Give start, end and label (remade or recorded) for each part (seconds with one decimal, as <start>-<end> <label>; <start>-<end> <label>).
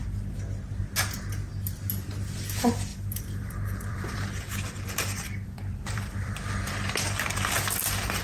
0.0-2.9 recorded; 2.9-6.6 remade; 6.6-8.2 recorded